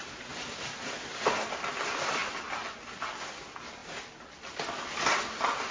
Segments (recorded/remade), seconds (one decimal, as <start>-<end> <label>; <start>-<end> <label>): 0.0-5.7 recorded